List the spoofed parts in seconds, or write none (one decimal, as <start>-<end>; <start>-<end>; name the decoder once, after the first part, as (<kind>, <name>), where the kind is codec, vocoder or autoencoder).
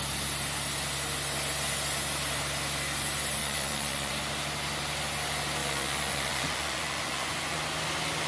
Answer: 3.4-4.1 (vocoder, Vocos); 5.6-7.6